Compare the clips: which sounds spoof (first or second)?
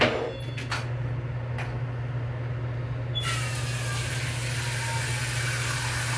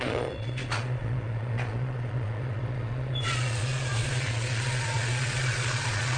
second